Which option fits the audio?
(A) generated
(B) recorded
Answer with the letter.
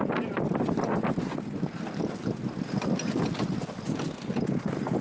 B